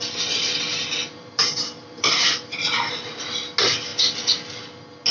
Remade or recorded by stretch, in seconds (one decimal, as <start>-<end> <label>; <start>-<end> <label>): 0.0-1.0 recorded; 1.0-2.9 remade; 2.9-5.1 recorded